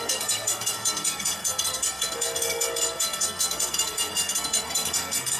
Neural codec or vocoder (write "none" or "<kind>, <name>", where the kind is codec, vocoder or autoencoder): codec, SNAC